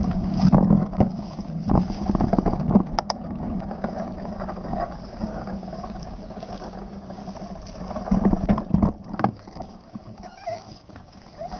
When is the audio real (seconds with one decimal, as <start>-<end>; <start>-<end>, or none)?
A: 7.2-9.1